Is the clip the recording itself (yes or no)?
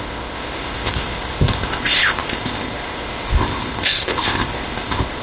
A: no